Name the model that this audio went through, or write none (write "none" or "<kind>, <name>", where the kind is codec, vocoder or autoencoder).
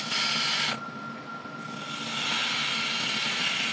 none